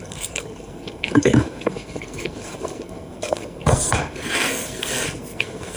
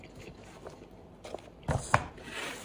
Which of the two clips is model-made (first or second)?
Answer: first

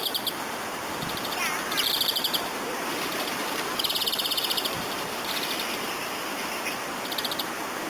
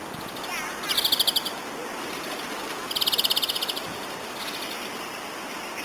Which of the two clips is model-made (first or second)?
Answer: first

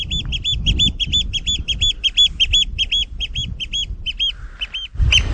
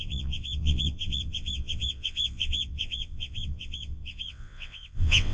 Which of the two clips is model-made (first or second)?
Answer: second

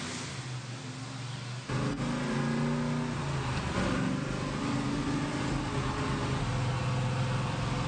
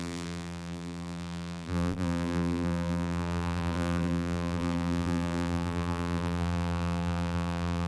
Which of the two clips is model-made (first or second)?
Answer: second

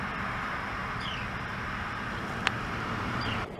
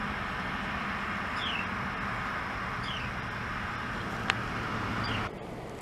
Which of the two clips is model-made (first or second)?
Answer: first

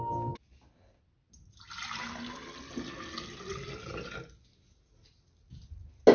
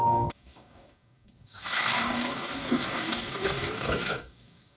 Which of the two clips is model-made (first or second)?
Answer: second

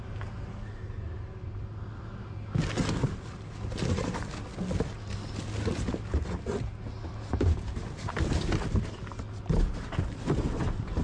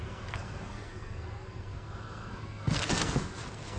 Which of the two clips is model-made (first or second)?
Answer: second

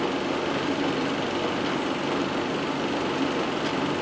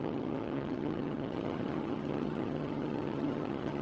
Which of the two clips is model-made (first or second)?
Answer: second